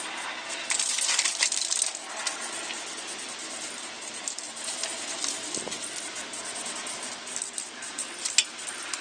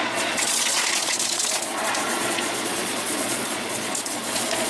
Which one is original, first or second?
first